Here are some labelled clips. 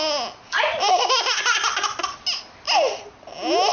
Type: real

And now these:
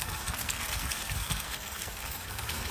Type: fake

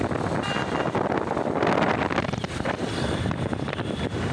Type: real